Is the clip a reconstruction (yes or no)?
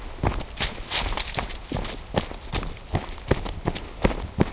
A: no